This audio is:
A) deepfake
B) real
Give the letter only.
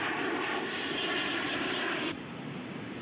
A